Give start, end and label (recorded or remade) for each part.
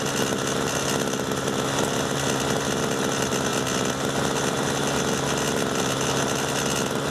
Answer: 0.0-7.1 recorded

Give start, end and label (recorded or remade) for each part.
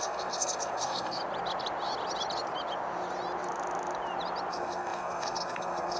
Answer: 0.0-1.2 remade; 1.2-4.5 recorded; 4.5-6.0 remade